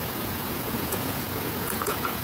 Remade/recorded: remade